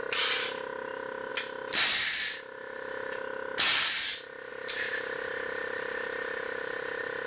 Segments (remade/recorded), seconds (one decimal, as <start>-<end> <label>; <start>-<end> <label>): 0.0-7.3 recorded

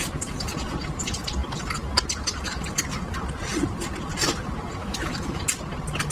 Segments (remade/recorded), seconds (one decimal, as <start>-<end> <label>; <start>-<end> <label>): 0.0-4.8 recorded; 4.8-5.4 remade; 5.4-6.1 recorded

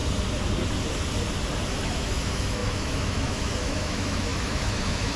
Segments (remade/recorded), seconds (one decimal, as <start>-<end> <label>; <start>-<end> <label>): 0.0-1.8 recorded; 1.8-5.2 remade